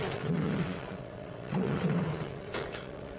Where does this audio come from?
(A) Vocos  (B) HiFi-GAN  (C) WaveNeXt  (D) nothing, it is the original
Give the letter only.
C